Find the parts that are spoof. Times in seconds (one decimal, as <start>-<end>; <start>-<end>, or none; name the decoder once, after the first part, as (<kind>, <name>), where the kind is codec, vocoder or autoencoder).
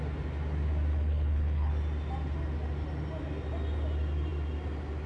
0.9-1.7 (codec, HILCodec)